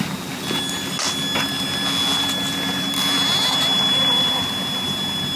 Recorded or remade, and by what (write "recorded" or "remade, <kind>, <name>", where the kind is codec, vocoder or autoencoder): recorded